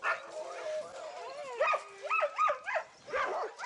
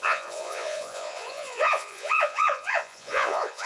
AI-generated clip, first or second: second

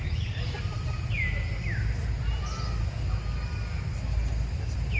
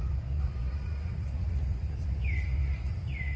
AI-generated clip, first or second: second